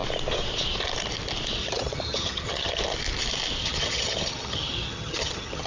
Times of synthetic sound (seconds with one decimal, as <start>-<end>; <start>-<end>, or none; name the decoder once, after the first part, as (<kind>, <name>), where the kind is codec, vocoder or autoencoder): 1.6-2.8 (vocoder, HiFi-GAN); 3.6-5.7